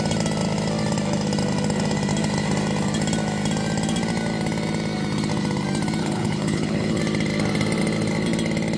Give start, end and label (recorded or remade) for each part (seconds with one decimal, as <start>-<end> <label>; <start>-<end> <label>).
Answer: 0.0-6.0 recorded; 6.0-7.0 remade; 7.0-8.8 recorded